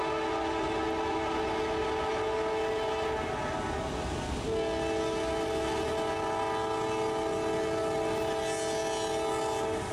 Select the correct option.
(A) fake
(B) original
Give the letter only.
B